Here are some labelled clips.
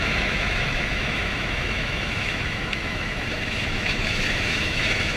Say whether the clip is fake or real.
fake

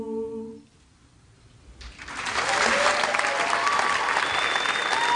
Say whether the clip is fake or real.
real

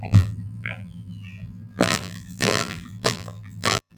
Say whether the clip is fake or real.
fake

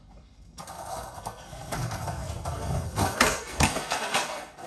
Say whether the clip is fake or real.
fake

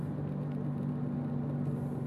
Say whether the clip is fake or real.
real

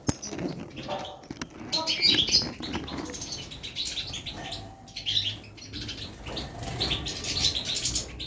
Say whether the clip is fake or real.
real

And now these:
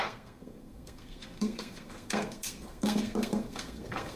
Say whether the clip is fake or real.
fake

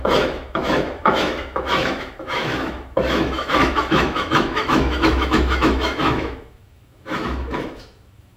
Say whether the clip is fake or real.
fake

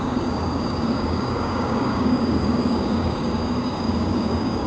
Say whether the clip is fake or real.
fake